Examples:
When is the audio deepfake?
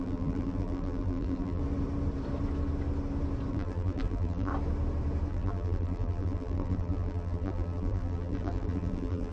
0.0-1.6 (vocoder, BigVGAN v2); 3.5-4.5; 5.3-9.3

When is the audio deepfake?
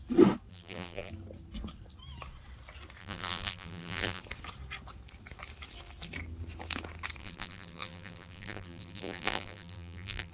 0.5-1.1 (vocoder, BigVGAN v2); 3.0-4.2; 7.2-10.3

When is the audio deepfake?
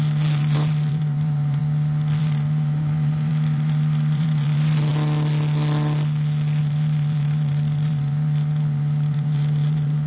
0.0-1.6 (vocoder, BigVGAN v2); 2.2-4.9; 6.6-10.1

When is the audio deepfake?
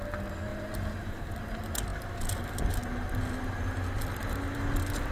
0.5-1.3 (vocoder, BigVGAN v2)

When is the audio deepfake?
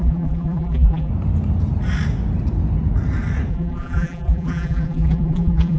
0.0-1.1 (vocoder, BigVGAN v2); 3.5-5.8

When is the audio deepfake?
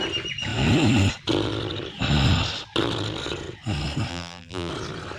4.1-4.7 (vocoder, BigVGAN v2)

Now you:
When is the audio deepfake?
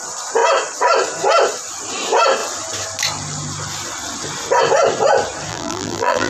5.5-6.3 (vocoder, BigVGAN v2)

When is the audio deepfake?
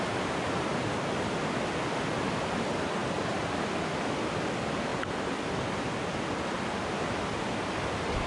none